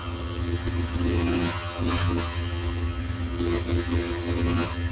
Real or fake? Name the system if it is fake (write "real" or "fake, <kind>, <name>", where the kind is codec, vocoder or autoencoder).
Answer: fake, vocoder, HiFi-GAN